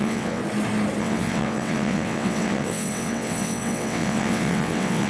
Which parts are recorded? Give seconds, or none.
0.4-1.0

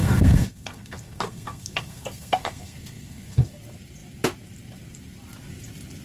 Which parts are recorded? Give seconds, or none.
3.6-6.0

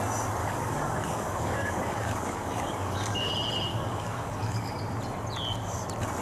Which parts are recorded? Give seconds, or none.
0.0-0.4; 3.3-3.7; 4.8-6.2

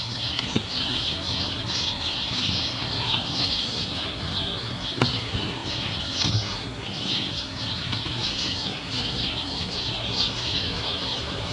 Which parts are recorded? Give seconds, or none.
none

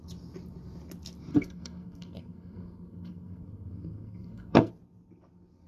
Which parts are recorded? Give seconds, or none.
0.0-1.3; 4.7-5.7